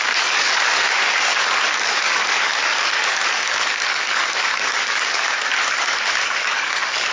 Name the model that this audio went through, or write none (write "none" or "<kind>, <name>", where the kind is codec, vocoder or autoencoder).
codec, DAC